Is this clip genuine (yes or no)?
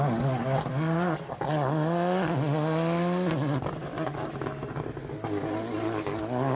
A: yes